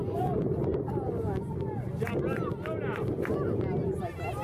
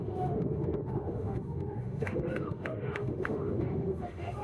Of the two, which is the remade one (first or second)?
second